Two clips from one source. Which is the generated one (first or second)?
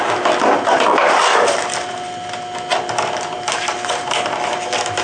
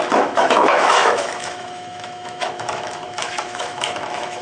second